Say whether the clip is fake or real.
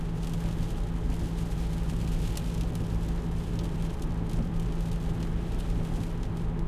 real